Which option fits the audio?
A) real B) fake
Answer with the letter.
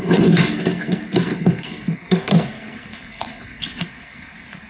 B